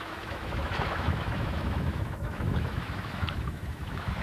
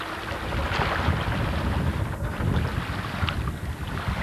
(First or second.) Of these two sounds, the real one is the second